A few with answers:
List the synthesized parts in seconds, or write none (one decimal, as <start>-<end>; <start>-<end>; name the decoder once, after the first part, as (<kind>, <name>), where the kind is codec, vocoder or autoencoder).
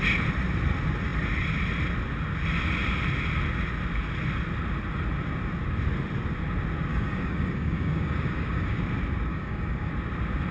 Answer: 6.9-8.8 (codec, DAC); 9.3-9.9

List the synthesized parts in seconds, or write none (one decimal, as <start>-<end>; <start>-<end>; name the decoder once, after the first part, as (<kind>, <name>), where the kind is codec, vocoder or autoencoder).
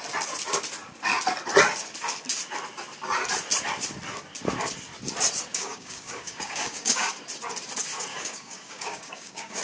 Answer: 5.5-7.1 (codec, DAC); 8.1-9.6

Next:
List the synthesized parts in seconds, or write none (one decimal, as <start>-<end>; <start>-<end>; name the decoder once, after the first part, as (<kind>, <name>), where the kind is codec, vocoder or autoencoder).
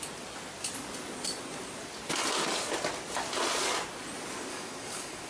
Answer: 4.5-5.3 (codec, DAC)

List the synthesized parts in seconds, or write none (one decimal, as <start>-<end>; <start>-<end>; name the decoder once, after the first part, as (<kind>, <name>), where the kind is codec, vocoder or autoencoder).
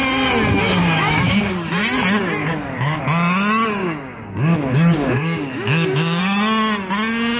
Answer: 0.8-1.5 (codec, DAC); 2.4-3.0; 3.8-6.2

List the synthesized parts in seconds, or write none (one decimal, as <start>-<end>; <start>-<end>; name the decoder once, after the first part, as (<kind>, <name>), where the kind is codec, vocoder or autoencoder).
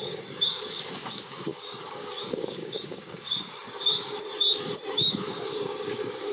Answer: 0.0-6.3 (codec, DAC)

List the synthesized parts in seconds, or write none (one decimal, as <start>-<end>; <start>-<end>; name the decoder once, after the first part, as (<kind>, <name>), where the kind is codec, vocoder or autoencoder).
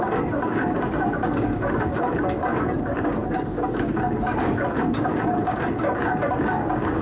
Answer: 0.0-7.0 (codec, DAC)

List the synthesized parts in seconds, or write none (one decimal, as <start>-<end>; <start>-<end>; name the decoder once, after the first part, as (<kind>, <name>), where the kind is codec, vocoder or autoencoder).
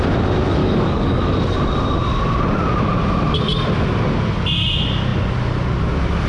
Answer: 0.6-1.3 (codec, DAC)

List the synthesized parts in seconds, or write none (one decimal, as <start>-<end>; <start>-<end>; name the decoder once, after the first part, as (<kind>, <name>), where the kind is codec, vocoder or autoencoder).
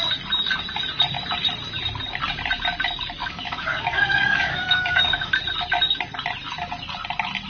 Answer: 3.2-5.3 (codec, DAC)